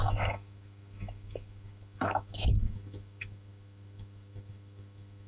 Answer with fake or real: fake